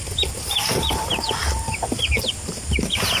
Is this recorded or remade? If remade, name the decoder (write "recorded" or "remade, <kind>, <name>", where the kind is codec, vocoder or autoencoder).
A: recorded